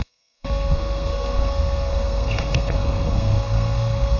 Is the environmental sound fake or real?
fake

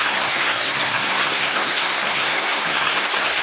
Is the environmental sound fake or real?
fake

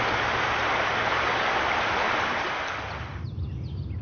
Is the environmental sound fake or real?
real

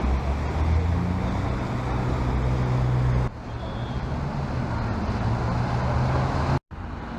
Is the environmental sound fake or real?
real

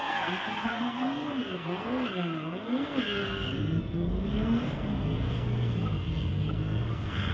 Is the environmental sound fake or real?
fake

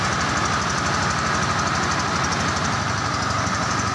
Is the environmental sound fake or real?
real